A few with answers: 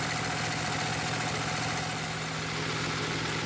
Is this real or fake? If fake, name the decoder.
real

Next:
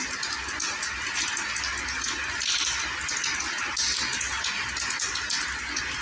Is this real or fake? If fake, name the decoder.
real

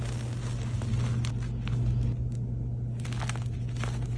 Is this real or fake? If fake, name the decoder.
real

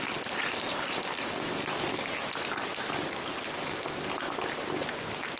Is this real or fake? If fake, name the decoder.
real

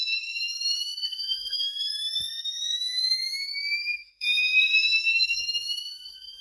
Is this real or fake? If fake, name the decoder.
fake, autoencoder, DAC-VAE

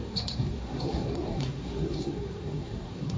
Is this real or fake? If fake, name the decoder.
fake, codec, SNAC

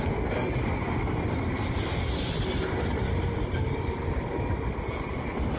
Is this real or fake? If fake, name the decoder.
real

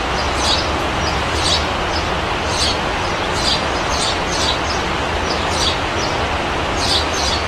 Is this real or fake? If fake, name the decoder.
real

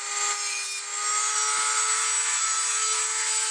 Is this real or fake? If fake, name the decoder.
real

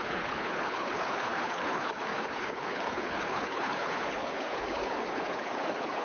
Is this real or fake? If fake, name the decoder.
fake, codec, HILCodec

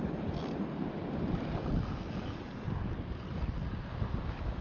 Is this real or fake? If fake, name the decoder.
real